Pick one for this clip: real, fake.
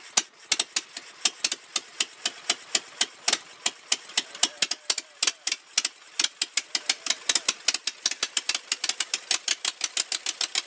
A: real